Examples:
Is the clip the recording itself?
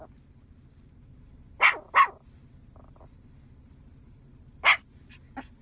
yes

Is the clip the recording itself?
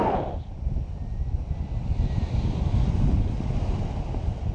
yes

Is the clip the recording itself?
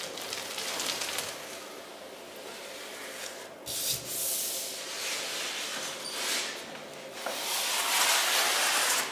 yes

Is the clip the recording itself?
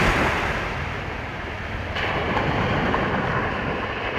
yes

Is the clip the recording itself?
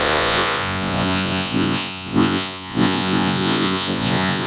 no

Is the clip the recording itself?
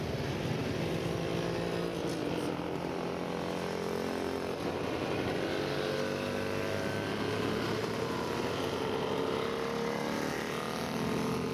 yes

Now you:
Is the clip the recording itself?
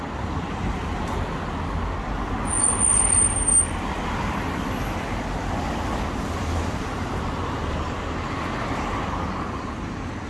yes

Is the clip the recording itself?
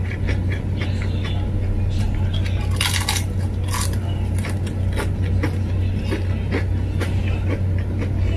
yes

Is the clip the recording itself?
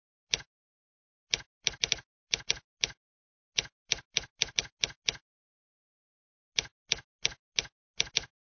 yes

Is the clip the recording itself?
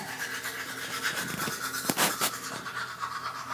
yes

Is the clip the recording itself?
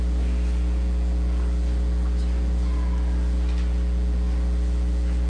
yes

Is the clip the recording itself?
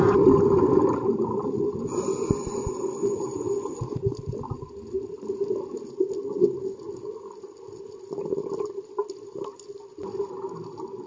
yes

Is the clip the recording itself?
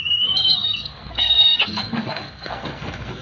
no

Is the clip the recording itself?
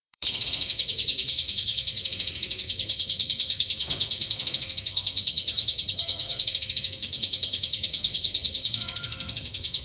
no